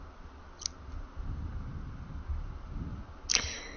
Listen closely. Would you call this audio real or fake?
real